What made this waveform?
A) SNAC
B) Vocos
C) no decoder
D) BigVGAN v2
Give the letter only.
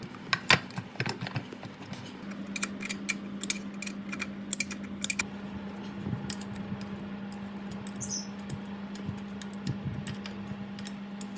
C